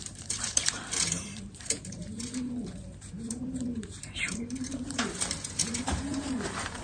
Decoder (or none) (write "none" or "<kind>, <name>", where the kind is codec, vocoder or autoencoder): vocoder, BigVGAN v2